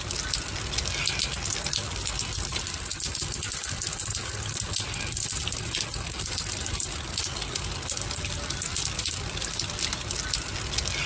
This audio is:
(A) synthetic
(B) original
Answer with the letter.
B